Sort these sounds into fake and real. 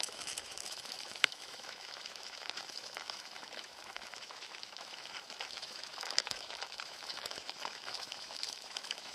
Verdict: fake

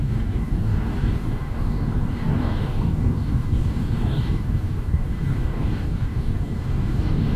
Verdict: fake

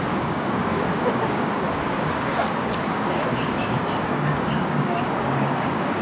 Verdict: fake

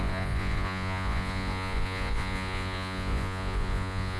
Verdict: fake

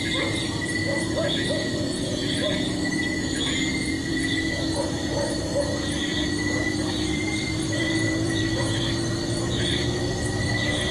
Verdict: fake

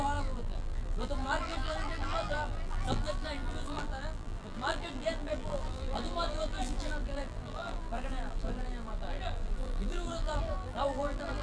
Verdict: fake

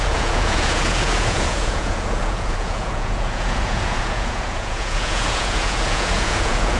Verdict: fake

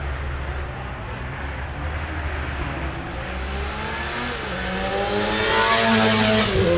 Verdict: real